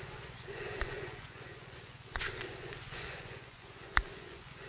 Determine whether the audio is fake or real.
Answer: fake